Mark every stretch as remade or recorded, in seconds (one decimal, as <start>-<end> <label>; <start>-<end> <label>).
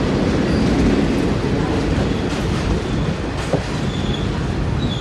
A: 0.0-1.4 recorded; 1.4-2.7 remade; 2.7-5.0 recorded